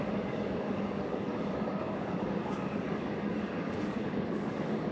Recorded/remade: remade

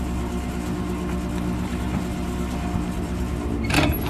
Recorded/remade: recorded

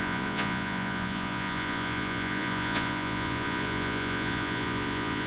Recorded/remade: remade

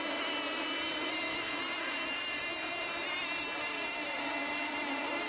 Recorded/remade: recorded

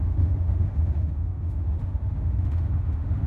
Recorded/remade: remade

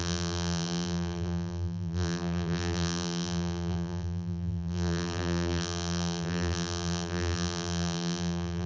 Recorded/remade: remade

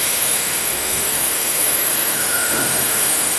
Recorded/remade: remade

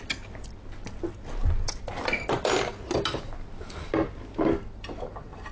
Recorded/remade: recorded